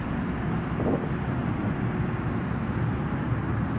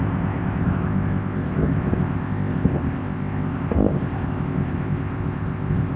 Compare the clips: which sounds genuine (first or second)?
first